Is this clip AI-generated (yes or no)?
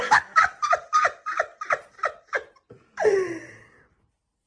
yes